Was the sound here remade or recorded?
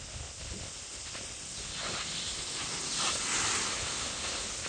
recorded